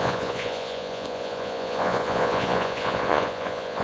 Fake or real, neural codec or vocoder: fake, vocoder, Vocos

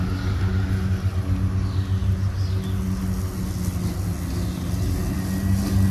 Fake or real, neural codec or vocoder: real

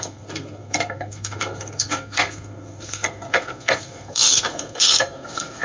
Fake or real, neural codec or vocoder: fake, codec, SNAC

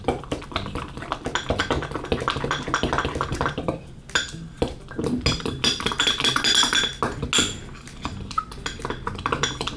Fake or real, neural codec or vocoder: real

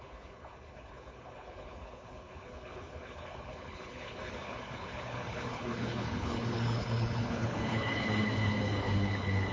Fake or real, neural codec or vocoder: fake, codec, HILCodec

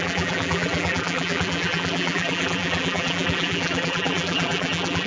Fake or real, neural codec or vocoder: fake, vocoder, BigVGAN v2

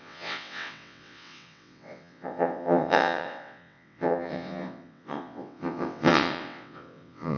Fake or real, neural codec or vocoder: fake, vocoder, WaveNeXt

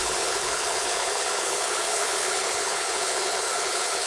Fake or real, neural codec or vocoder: fake, codec, HILCodec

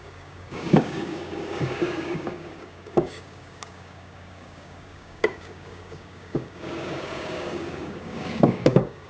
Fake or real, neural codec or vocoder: fake, codec, DAC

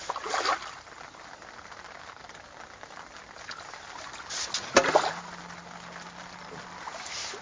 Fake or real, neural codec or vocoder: real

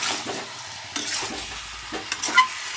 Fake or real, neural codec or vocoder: real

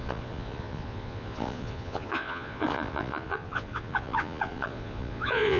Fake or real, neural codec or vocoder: fake, vocoder, Vocos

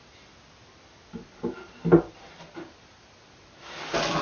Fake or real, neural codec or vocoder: real